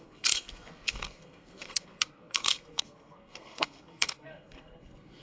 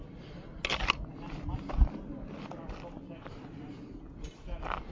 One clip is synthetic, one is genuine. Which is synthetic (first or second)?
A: first